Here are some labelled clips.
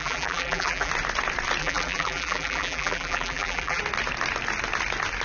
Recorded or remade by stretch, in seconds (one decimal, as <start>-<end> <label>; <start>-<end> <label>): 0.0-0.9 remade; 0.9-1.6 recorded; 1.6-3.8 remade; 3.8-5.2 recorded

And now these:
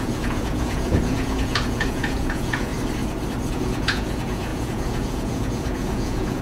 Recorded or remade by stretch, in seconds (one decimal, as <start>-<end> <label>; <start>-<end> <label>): 0.0-2.7 remade; 2.7-3.5 recorded; 3.5-6.4 remade

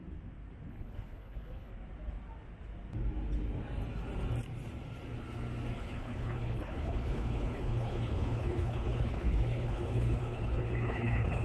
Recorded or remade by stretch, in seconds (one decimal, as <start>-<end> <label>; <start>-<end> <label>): 0.0-0.7 recorded; 0.7-1.7 remade; 1.7-5.8 recorded; 5.8-11.4 remade

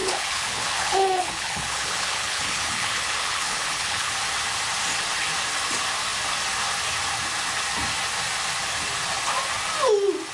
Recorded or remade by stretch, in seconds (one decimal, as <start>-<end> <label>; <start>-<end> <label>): 0.0-4.1 remade; 4.1-10.3 recorded

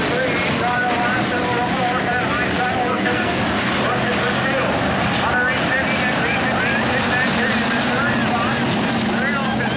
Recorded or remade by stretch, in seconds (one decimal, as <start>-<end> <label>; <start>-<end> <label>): 0.0-2.9 recorded; 2.9-3.4 remade; 3.4-9.8 recorded

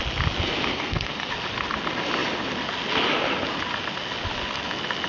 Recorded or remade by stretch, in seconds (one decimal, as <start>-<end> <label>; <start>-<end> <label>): 0.0-0.7 recorded; 0.7-1.3 remade; 1.3-5.1 recorded